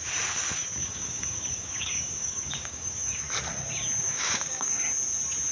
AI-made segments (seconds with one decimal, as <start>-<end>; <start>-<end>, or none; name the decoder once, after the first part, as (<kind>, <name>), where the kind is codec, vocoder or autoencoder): 0.8-3.2 (codec, DAC); 4.0-4.8